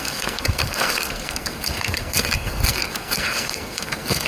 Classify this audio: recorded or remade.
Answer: remade